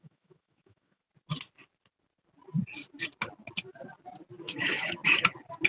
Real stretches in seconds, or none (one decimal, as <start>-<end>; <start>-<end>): 1.0-4.4; 5.0-5.7